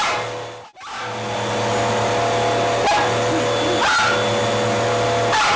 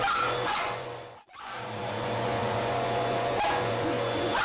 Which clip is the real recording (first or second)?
first